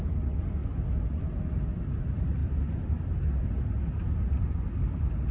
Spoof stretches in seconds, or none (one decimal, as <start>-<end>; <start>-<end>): 0.6-1.2; 2.4-3.6; 4.4-5.3